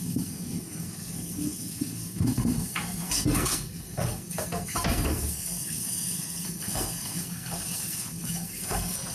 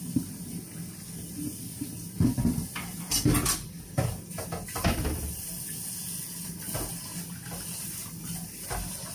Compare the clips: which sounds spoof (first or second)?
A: first